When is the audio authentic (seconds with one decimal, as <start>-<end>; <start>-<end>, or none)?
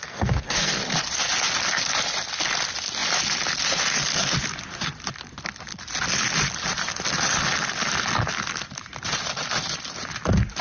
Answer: 0.8-10.6